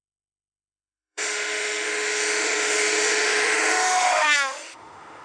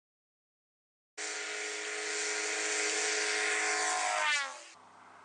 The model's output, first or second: first